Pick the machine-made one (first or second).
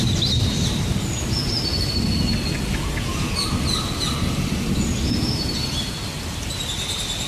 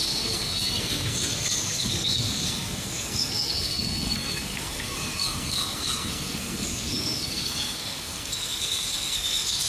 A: second